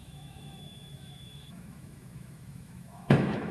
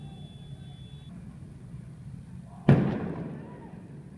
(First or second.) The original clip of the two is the second